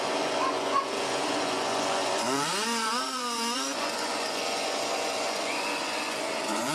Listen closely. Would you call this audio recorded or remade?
remade